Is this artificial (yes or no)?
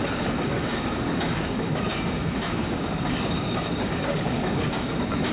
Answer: yes